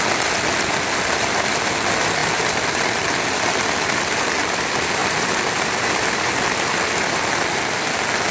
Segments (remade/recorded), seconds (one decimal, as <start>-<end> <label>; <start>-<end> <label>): 0.0-5.0 recorded; 5.0-7.3 remade; 7.3-8.3 recorded